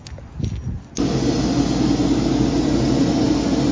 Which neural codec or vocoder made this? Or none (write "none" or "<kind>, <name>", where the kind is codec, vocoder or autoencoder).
none